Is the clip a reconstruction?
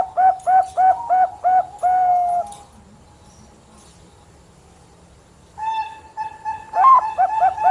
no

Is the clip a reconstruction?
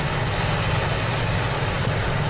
no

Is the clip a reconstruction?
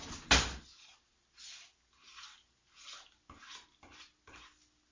no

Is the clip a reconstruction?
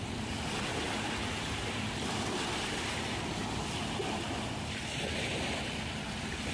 no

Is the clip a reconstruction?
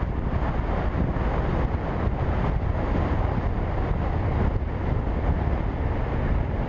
no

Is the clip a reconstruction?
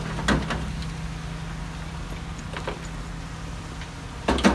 no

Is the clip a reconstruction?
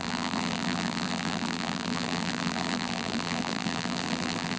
yes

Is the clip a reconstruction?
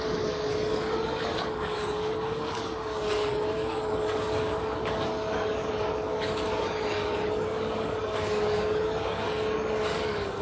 yes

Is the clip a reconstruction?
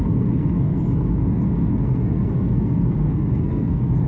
yes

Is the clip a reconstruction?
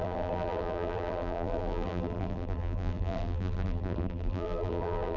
yes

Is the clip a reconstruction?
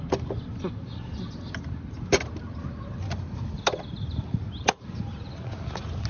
no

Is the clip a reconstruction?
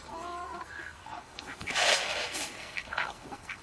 yes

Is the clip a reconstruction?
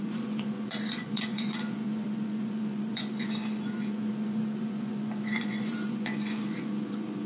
yes